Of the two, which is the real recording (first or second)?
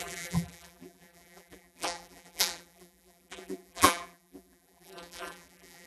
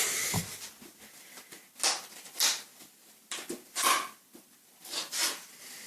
second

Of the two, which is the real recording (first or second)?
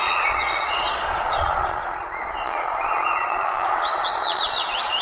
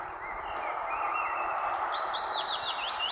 second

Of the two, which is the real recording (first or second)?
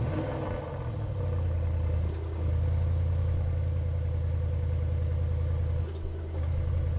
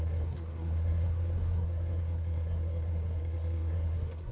first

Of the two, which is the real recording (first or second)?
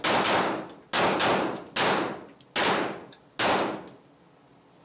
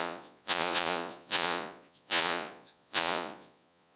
first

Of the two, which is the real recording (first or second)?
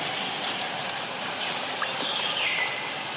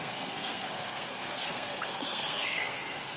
first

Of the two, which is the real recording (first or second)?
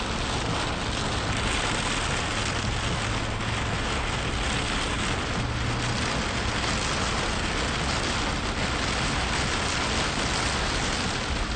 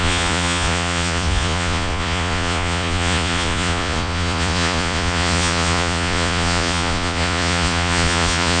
first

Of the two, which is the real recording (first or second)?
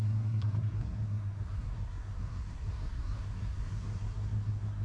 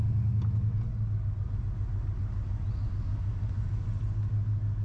second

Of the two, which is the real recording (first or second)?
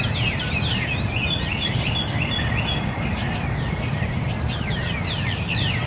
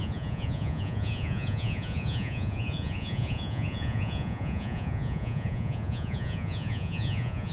first